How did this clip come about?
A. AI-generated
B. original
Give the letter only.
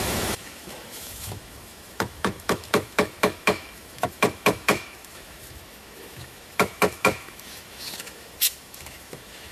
A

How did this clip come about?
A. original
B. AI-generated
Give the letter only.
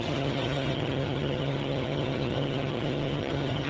B